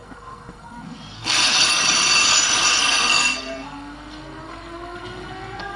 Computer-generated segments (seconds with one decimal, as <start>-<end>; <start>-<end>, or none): 0.0-1.8; 2.8-5.8